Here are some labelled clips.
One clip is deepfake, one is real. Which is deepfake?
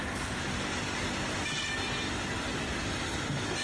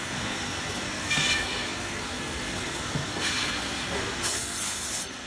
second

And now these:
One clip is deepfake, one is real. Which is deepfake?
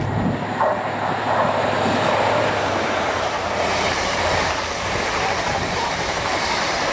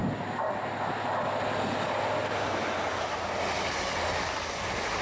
first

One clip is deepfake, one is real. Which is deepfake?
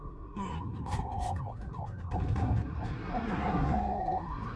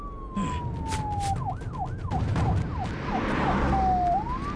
first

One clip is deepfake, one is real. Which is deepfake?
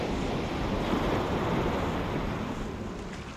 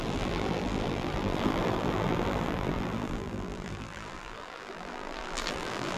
second